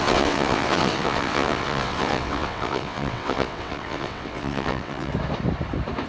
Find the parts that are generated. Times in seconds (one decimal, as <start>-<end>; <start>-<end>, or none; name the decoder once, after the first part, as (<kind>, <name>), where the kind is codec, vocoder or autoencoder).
0.0-5.1 (vocoder, WaveNeXt)